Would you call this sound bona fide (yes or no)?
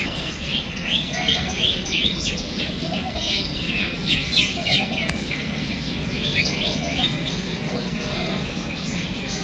no